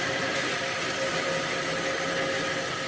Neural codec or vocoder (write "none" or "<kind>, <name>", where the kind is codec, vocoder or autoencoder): none